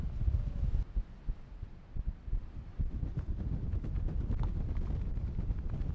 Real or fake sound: real